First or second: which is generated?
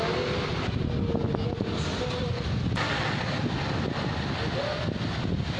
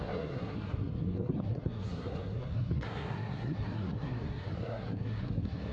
second